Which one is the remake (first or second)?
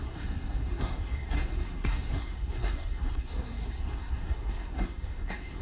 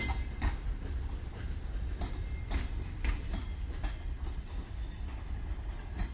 first